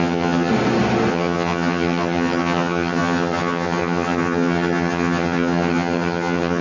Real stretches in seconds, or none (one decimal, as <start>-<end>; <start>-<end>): 0.5-1.1